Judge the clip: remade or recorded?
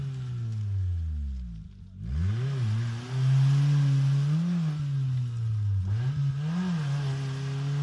recorded